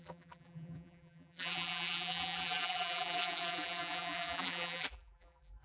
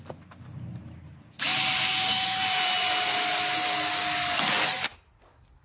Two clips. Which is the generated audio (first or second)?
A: first